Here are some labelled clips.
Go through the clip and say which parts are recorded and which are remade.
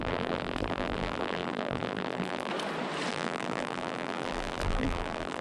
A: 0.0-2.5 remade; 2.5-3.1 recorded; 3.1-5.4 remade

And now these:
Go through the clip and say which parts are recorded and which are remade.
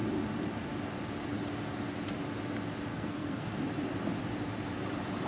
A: 0.0-2.9 recorded; 2.9-3.5 remade; 3.5-5.3 recorded